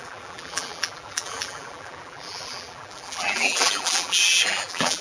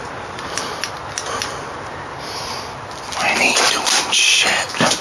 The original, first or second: second